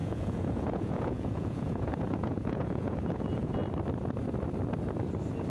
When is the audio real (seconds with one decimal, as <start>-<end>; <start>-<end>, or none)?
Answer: 3.6-5.5